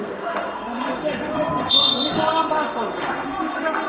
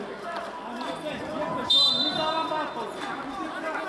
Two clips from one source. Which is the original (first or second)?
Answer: second